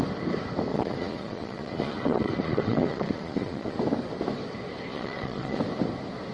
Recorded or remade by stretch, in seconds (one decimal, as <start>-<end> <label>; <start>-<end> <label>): 0.0-0.7 recorded; 0.7-3.8 remade; 3.8-4.9 recorded; 4.9-5.6 remade; 5.6-6.3 recorded